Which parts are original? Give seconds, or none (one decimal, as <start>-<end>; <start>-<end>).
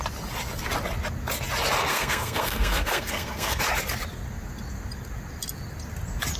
0.0-1.9; 3.6-6.4